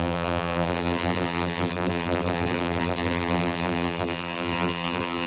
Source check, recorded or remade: remade